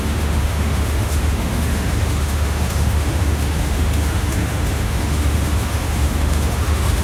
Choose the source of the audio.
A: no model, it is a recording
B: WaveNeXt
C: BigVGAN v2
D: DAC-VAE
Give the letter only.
D